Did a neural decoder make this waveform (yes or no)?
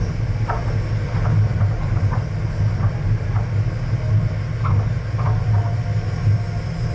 no